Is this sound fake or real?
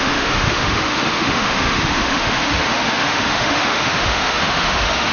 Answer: fake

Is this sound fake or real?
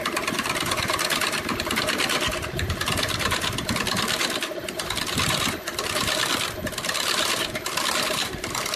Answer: fake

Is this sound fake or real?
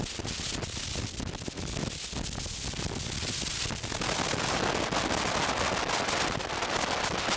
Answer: real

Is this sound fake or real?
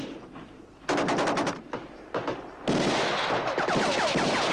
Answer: real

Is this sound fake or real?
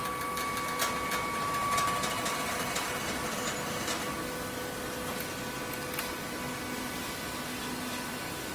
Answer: real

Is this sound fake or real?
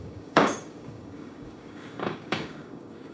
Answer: fake